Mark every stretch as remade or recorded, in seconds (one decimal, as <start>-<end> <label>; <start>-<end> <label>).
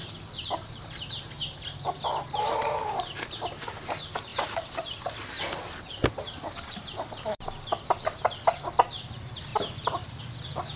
0.0-1.3 remade; 1.3-4.3 recorded; 4.3-7.4 remade; 7.4-9.5 recorded; 9.5-10.2 remade; 10.2-10.8 recorded